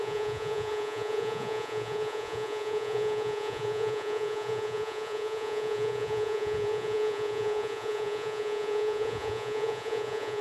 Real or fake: fake